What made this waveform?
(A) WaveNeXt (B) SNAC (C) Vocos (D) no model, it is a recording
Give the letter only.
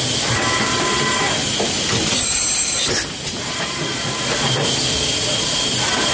D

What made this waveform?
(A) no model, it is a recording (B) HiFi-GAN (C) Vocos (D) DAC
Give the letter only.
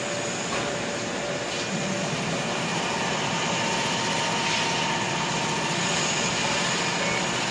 A